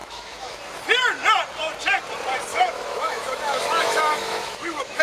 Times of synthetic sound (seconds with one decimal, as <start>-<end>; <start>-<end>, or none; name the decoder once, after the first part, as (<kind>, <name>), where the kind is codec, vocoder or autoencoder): 0.0-0.6 (autoencoder, DAC-VAE); 2.5-5.0